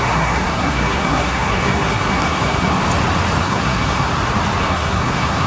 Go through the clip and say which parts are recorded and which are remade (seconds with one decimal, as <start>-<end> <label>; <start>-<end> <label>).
0.0-2.8 remade; 2.8-3.4 recorded; 3.4-4.1 remade; 4.1-4.6 recorded; 4.6-5.5 remade